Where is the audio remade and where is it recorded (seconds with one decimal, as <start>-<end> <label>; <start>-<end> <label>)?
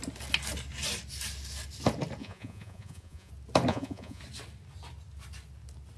0.0-2.2 recorded; 2.2-3.3 remade; 3.3-3.7 recorded; 3.7-4.2 remade; 4.2-6.0 recorded